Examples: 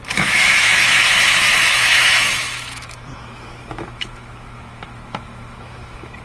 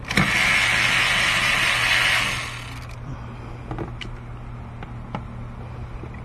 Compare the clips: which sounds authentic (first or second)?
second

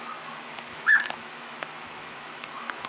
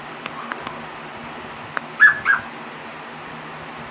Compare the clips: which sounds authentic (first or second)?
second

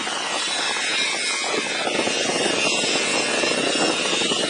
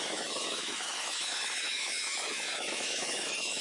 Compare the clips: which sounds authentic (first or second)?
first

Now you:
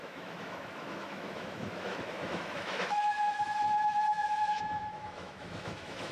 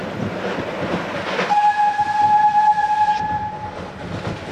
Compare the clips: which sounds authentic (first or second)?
second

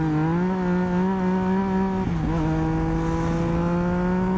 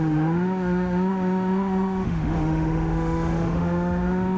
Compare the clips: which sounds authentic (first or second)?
first